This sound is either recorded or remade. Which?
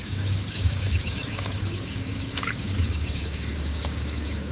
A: remade